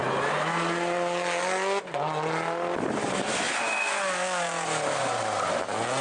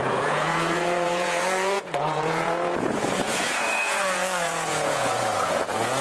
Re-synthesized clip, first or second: second